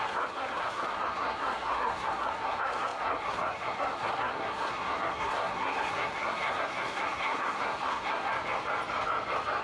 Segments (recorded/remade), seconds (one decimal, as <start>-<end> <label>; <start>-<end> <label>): 0.0-8.3 remade; 8.3-9.6 recorded